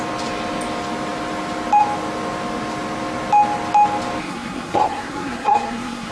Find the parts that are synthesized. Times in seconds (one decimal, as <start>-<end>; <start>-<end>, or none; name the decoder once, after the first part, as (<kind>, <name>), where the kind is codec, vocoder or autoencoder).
4.2-6.1 (codec, SNAC)